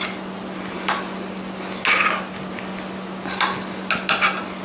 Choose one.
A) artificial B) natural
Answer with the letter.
B